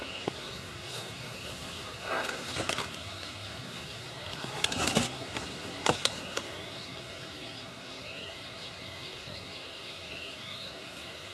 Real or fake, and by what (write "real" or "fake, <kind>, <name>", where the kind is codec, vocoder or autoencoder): fake, codec, SNAC